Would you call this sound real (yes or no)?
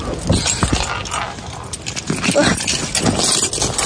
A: yes